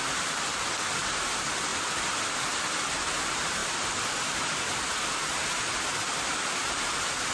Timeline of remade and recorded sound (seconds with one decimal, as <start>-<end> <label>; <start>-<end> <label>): 0.0-1.7 recorded; 1.7-3.1 remade; 3.1-3.6 recorded; 3.6-7.3 remade